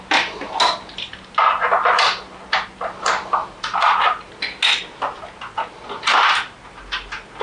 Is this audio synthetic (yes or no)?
no